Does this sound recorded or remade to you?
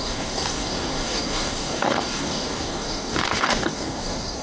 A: remade